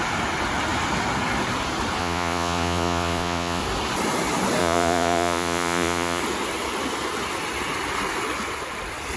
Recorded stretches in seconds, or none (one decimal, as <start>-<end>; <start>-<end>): 0.0-2.0; 3.6-4.6; 6.2-9.2